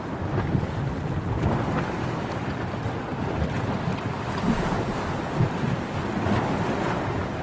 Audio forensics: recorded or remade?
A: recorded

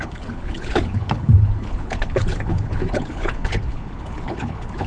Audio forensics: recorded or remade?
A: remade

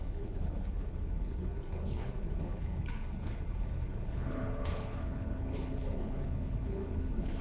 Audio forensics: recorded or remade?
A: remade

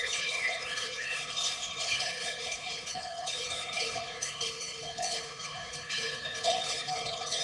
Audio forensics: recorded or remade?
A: remade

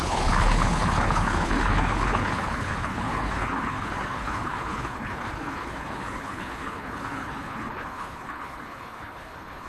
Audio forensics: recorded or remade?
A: remade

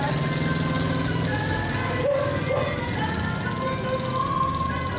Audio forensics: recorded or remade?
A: recorded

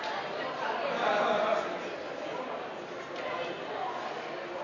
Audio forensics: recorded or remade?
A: recorded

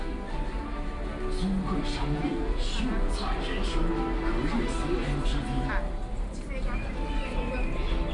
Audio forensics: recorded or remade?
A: recorded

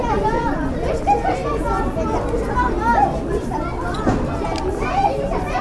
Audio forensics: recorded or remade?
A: recorded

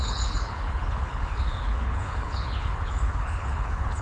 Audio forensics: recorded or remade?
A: remade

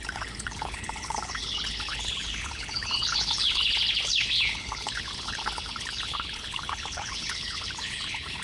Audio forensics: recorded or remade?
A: remade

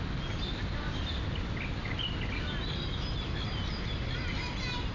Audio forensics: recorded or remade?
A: recorded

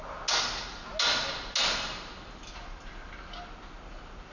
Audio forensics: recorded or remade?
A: recorded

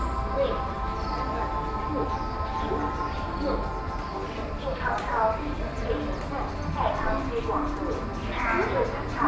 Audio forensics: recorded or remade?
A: recorded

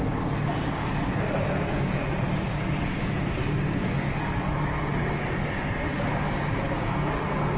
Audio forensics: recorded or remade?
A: recorded